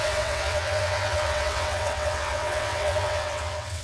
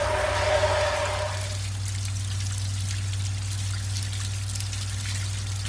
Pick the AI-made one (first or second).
first